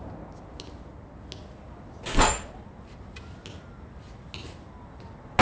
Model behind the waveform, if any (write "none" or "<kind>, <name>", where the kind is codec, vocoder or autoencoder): none